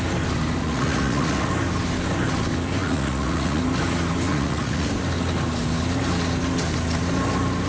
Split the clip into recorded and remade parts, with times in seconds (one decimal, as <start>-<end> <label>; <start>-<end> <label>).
0.0-0.6 recorded; 0.6-1.5 remade; 1.5-2.8 recorded; 2.8-3.6 remade; 3.6-4.3 recorded; 4.3-4.9 remade; 4.9-7.7 recorded